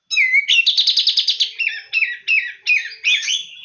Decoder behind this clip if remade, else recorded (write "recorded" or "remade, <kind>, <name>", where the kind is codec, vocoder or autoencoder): recorded